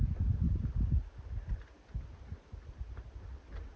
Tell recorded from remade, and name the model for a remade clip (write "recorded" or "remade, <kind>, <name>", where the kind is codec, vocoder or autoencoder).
recorded